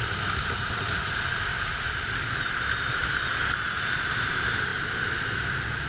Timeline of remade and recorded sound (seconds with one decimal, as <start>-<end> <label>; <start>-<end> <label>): 0.0-1.5 remade; 1.5-2.5 recorded; 2.5-3.0 remade; 3.0-4.3 recorded; 4.3-4.7 remade; 4.7-5.9 recorded